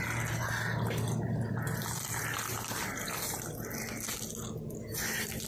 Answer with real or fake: real